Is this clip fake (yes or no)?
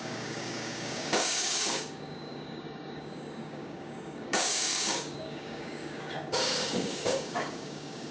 yes